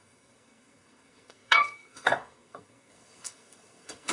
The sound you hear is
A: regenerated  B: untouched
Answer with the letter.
A